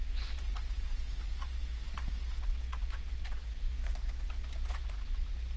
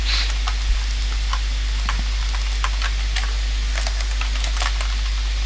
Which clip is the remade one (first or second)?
first